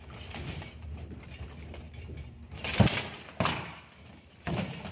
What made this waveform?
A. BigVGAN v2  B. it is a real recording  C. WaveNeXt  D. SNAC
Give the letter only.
B